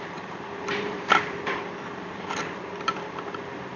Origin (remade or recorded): remade